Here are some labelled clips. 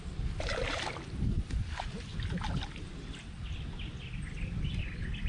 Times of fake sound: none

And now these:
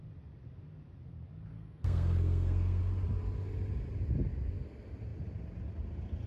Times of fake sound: 1.5-2.8

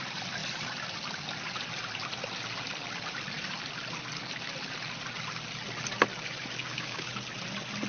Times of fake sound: 6.6-7.1

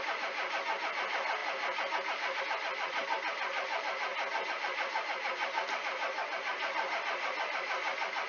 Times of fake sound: none

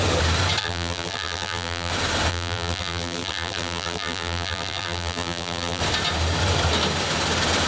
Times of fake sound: 0.6-1.9; 2.3-5.8

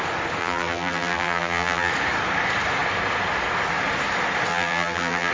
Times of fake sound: 0.4-1.9; 4.5-5.3